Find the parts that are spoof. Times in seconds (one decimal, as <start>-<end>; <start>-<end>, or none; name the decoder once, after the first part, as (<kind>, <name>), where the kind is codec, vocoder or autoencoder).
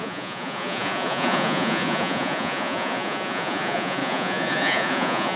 0.0-5.4 (vocoder, Vocos)